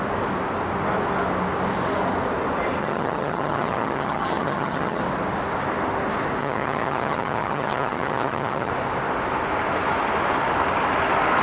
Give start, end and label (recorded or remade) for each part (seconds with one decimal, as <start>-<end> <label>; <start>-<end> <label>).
0.0-2.8 recorded; 2.8-5.0 remade; 5.0-6.4 recorded; 6.4-8.7 remade; 8.7-11.4 recorded